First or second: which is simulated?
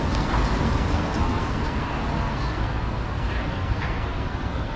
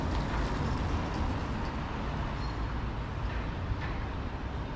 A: first